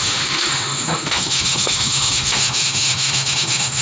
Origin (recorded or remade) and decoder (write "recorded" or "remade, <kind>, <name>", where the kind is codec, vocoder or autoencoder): remade, autoencoder, DAC-VAE